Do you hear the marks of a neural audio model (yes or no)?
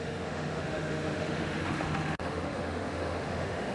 yes